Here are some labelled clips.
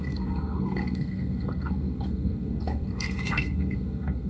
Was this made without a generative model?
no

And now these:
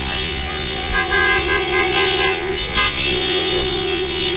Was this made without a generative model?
no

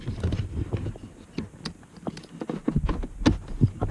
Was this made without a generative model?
yes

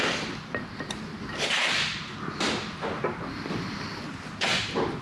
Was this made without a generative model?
yes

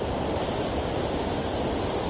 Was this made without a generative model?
yes